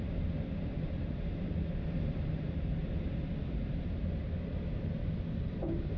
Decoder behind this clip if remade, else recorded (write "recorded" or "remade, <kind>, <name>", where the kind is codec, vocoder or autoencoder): recorded